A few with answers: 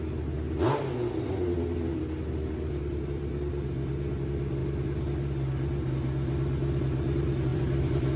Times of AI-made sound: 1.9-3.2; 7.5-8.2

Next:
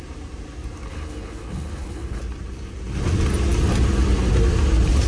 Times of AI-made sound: 0.9-2.2

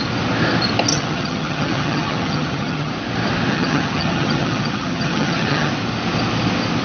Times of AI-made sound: 0.9-2.9; 3.5-5.7

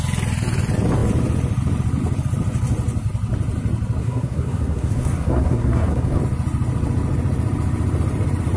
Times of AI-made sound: 4.0-6.2